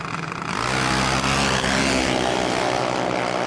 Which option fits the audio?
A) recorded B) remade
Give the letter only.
A